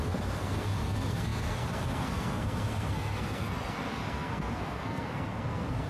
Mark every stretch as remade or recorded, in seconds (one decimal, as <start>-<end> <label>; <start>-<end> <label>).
0.0-5.9 remade